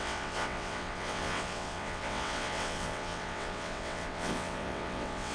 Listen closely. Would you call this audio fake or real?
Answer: fake